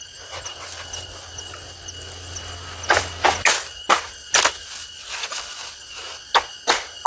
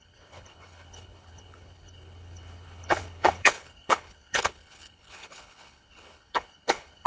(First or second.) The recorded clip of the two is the first